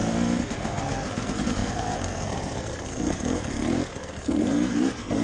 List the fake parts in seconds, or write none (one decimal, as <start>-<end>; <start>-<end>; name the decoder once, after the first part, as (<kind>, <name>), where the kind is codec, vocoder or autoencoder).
0.5-5.2 (codec, SNAC)